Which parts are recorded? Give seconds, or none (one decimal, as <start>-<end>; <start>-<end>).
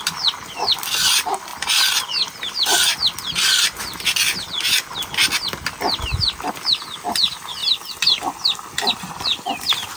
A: 1.5-6.5; 7.6-8.9